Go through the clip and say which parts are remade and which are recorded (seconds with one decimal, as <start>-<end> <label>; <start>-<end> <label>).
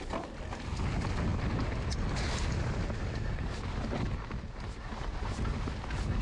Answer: 0.0-6.2 recorded